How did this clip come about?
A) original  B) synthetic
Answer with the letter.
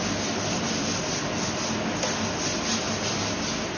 A